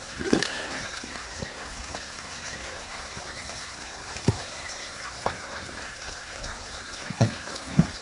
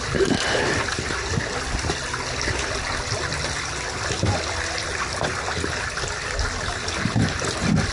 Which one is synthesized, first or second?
first